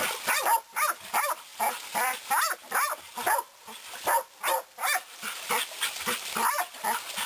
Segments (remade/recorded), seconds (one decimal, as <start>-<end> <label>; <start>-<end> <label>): 0.0-7.3 recorded